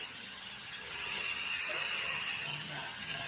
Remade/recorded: remade